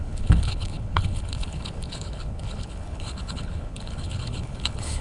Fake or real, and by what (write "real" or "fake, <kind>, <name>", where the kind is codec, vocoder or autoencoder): fake, codec, HILCodec